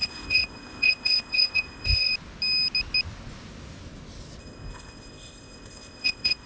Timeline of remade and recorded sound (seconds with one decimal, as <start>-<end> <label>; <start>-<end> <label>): 0.0-2.1 remade; 2.1-4.4 recorded; 4.4-6.5 remade